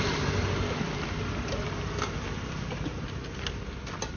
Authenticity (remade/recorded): recorded